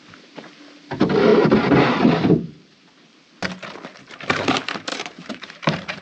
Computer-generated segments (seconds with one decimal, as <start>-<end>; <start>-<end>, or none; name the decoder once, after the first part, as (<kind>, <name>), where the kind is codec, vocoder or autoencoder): 1.3-2.9 (vocoder, BigVGAN v2); 4.9-6.0